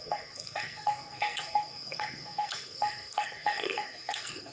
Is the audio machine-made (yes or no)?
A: yes